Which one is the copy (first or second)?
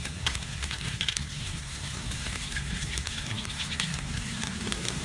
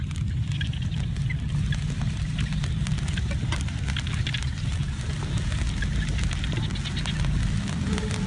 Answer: first